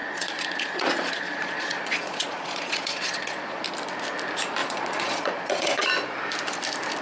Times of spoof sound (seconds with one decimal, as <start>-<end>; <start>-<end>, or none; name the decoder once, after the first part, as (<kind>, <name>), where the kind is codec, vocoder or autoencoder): 0.0-3.6 (vocoder, Vocos); 4.6-5.9